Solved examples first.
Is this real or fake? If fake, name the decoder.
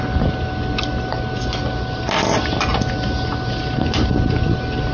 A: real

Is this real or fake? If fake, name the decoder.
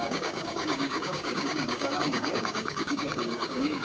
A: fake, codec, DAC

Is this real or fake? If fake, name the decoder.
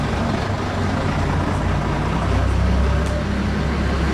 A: real